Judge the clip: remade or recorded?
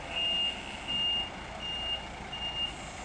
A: recorded